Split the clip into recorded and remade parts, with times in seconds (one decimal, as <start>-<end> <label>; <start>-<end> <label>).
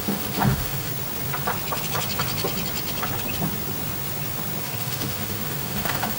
0.0-0.9 remade; 0.9-4.6 recorded; 4.6-6.2 remade